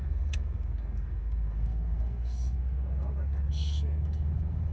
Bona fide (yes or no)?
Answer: no